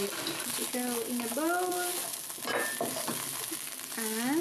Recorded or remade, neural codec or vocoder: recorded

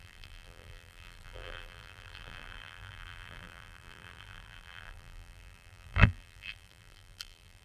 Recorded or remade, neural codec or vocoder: remade, vocoder, BigVGAN v2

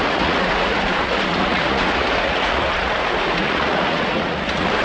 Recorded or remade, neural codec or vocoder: remade, vocoder, Vocos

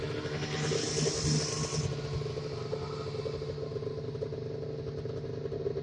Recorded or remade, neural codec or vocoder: recorded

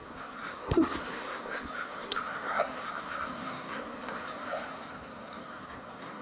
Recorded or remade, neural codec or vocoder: remade, codec, SNAC